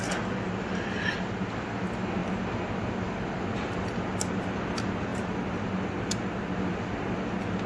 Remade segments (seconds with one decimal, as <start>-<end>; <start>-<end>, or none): none